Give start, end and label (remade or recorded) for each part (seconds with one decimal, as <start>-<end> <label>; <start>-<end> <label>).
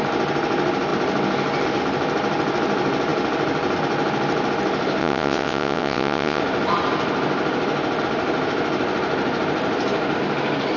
0.0-5.0 recorded; 5.0-6.4 remade; 6.4-10.8 recorded